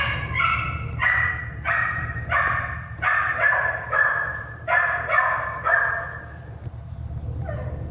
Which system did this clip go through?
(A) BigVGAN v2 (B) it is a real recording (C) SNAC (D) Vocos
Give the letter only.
A